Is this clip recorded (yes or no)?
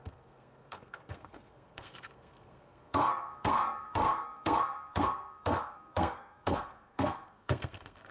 no